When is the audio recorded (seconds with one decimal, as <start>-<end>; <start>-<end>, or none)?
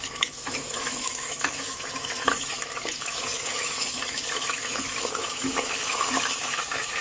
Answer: none